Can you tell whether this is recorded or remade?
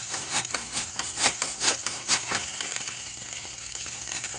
remade